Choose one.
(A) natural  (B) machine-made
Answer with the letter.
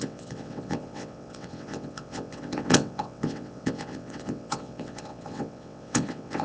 B